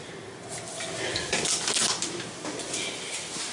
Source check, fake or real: real